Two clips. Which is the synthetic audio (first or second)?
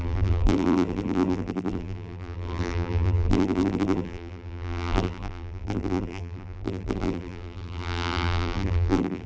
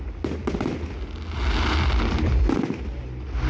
first